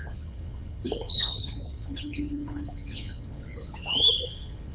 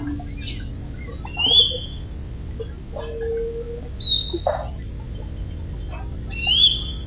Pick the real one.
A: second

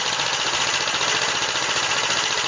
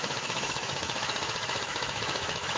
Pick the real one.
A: first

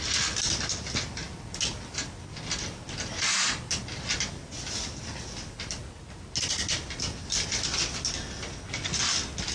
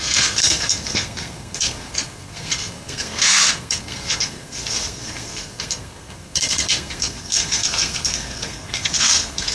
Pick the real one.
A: first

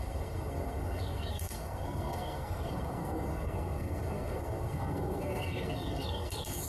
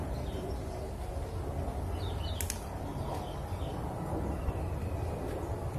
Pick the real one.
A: second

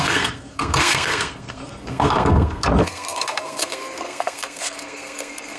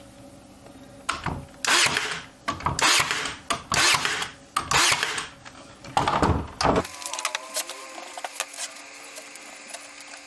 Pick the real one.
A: second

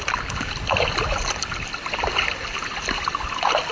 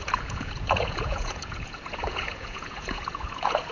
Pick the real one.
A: first